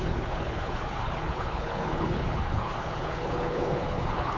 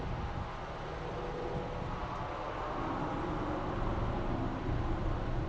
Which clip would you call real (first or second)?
second